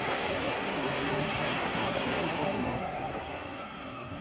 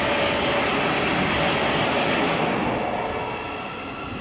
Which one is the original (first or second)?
second